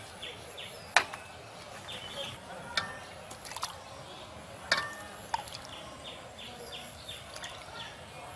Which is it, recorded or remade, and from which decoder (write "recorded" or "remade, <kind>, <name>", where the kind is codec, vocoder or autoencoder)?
recorded